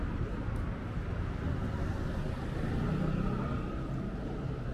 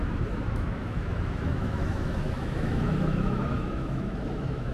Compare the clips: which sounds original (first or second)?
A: first